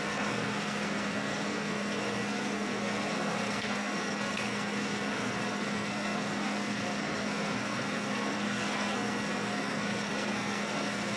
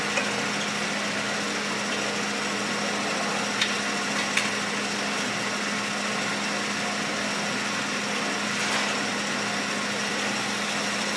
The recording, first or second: second